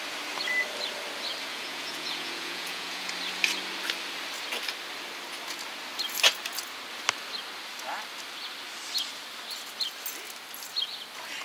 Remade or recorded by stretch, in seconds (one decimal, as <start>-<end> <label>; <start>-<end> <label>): 0.0-1.5 recorded; 1.5-3.1 remade; 3.1-11.4 recorded